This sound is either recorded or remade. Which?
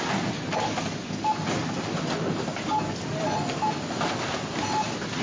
recorded